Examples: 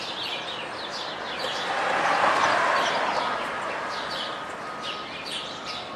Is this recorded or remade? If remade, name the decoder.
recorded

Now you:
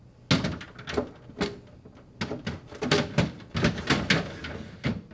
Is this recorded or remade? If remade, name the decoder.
recorded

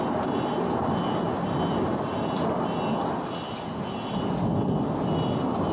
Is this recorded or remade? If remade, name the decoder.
recorded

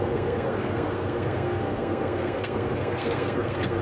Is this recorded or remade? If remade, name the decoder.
remade, codec, SNAC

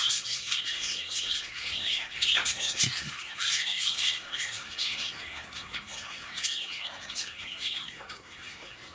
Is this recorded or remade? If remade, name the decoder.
remade, codec, SNAC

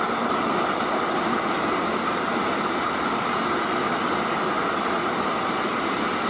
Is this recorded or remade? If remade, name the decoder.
recorded